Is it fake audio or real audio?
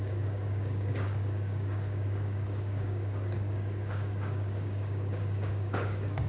fake